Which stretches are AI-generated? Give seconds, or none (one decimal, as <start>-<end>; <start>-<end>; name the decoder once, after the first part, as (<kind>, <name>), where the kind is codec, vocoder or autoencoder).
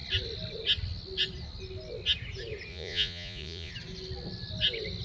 2.7-3.7 (vocoder, Vocos)